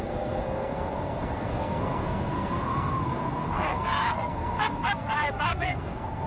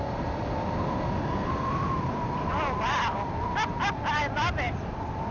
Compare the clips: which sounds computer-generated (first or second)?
first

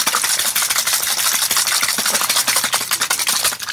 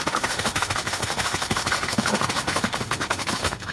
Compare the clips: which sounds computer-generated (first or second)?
second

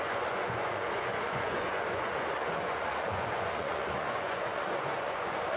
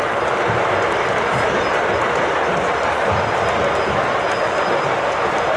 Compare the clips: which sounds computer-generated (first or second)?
first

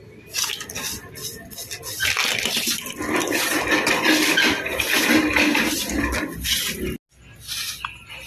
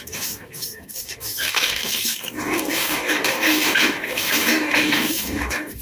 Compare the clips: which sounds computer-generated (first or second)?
second